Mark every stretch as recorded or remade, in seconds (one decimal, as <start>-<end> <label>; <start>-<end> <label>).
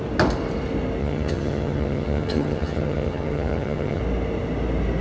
0.0-1.0 recorded; 1.0-4.0 remade; 4.0-5.0 recorded